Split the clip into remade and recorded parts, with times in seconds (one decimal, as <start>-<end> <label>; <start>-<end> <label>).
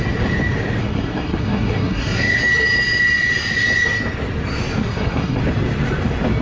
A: 0.0-0.8 recorded; 0.8-2.4 remade; 2.4-4.8 recorded; 4.8-5.4 remade; 5.4-6.4 recorded